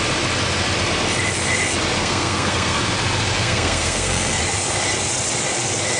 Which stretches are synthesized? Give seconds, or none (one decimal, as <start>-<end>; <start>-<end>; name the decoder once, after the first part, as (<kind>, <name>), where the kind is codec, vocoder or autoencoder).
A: 2.0-2.8 (codec, SNAC); 3.4-4.4